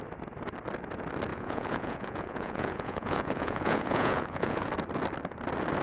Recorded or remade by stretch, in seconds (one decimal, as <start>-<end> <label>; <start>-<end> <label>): 0.0-1.3 recorded; 1.3-4.7 remade; 4.7-5.8 recorded